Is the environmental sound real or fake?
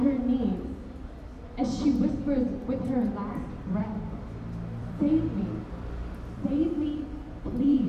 fake